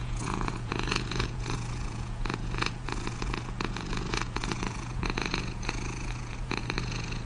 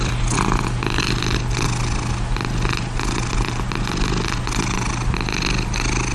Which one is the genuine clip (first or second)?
second